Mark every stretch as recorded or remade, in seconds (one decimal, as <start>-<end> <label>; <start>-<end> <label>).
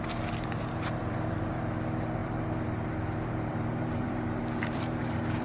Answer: 0.0-5.4 remade